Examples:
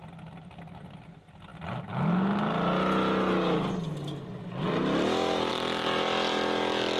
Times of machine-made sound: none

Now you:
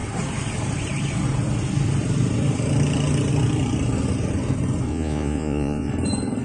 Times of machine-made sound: 4.9-5.9 (vocoder, Vocos)

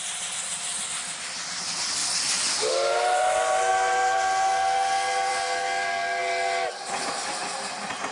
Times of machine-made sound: none

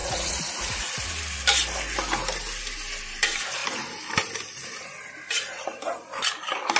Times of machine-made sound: 0.0-0.9 (vocoder, Vocos)